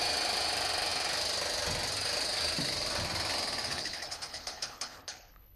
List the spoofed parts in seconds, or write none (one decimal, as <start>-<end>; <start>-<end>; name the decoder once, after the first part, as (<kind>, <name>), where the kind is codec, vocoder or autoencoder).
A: 3.7-5.6 (codec, HILCodec)